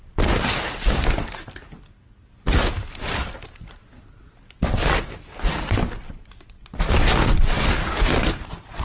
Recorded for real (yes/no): no